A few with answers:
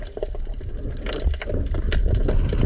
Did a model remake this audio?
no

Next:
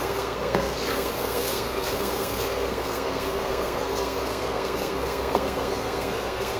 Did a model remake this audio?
yes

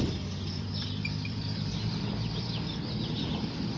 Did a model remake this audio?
yes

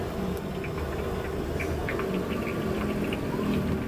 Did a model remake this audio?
no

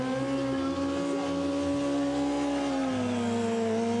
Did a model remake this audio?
no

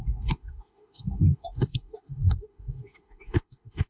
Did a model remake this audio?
yes